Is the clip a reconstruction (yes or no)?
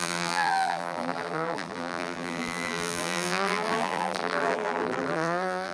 yes